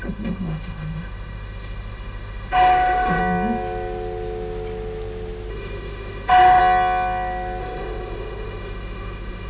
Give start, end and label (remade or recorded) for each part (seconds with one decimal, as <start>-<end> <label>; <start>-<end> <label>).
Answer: 0.0-3.2 remade; 3.2-5.5 recorded; 5.5-6.6 remade; 6.6-7.6 recorded; 7.6-9.5 remade